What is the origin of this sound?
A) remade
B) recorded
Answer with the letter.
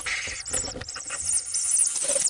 B